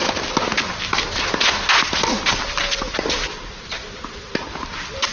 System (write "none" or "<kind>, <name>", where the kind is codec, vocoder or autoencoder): none